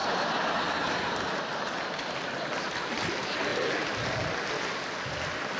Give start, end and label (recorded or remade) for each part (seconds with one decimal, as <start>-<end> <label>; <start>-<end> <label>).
0.0-5.6 recorded